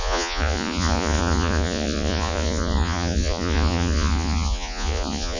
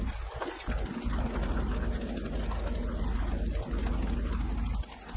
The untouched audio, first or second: second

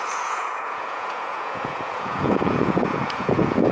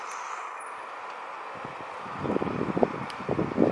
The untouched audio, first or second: second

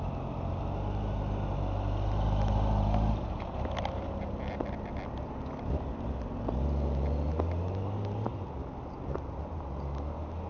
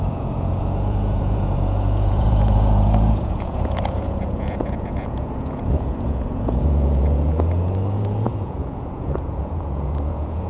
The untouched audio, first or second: first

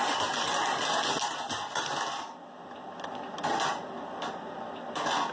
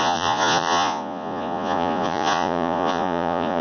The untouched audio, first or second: first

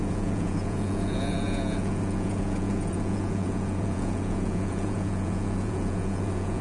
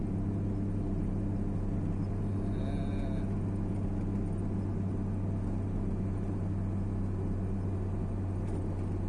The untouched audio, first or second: second